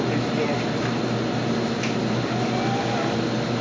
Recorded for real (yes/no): yes